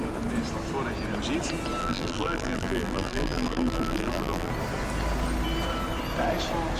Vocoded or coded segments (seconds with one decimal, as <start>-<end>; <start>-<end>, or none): 1.8-4.5